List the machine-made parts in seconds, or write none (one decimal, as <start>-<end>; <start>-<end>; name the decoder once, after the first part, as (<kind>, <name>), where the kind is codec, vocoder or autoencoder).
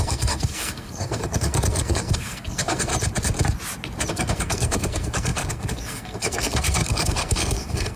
0.0-2.9 (codec, SNAC); 4.1-8.0